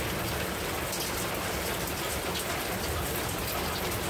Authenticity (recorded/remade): recorded